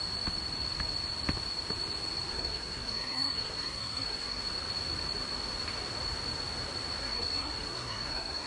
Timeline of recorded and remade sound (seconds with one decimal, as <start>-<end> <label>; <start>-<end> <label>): 0.0-2.3 recorded; 2.3-4.4 remade; 4.4-7.0 recorded; 7.0-8.5 remade